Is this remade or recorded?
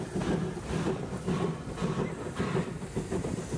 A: recorded